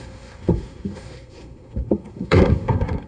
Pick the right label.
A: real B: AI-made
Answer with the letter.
B